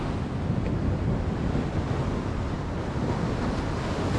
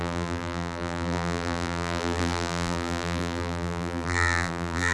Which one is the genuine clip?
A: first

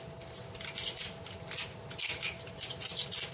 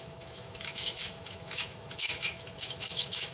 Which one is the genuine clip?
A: first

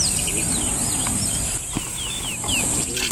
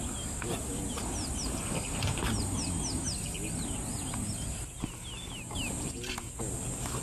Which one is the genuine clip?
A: second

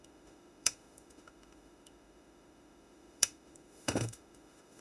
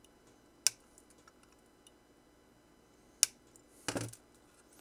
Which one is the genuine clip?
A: second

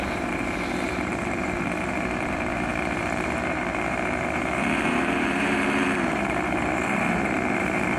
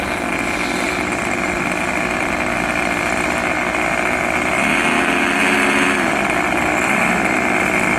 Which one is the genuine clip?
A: second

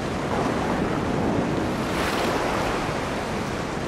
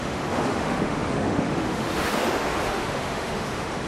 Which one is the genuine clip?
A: first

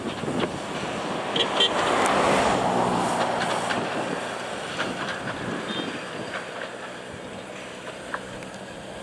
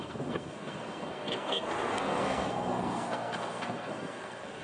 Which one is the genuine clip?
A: first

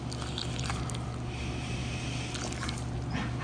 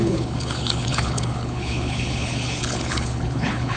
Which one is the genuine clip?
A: first